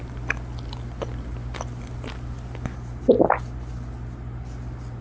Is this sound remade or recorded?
recorded